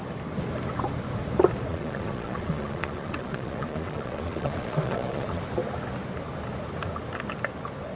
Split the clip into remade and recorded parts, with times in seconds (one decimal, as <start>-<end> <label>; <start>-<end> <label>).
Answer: 0.0-1.7 recorded; 1.7-5.4 remade; 5.4-8.0 recorded